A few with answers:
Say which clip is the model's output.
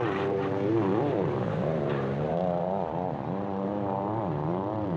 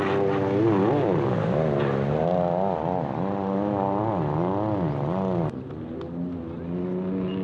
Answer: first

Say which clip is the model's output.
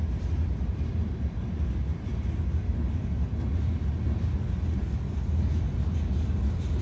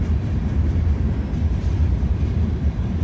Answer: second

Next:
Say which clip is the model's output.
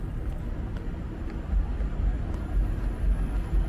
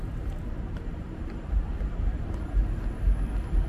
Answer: second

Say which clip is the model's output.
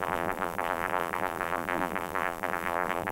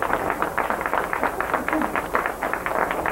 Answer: first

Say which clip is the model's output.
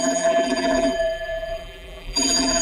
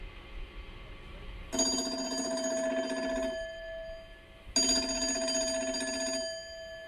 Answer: first